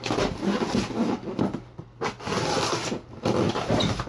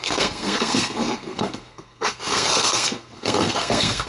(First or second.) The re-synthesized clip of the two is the second